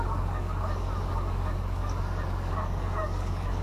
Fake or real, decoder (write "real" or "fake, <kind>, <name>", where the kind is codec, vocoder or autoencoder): fake, codec, DAC